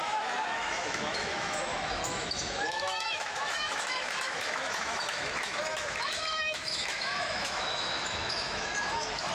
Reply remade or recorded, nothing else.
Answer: remade